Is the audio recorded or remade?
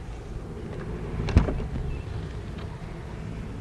recorded